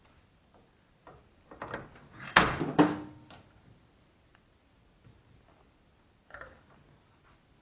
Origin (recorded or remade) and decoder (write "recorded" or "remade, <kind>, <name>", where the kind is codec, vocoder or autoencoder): recorded